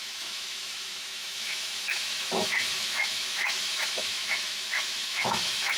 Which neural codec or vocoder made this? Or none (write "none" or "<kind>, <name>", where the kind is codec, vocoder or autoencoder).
autoencoder, DAC-VAE